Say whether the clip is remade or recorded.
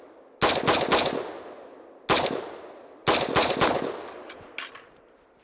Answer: recorded